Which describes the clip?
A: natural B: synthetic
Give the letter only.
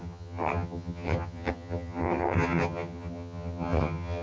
B